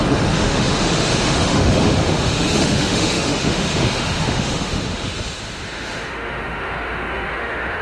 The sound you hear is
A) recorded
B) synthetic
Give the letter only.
B